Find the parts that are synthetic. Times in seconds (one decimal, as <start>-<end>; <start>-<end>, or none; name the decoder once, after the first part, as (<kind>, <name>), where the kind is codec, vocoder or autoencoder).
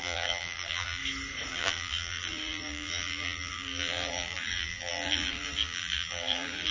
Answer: 0.0-1.0 (vocoder, BigVGAN v2); 1.5-6.7